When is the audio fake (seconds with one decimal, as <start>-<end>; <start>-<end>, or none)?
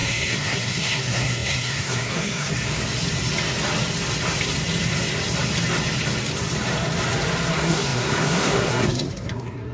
0.0-2.5; 7.5-9.7